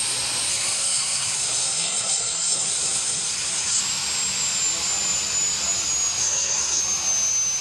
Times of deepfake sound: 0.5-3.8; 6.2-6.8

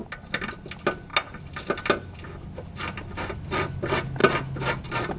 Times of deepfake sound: none

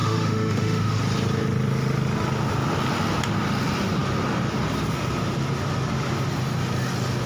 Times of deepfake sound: 0.0-1.0

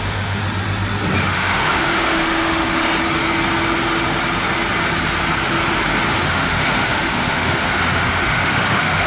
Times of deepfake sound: 0.0-0.4; 1.2-2.9; 6.1-9.1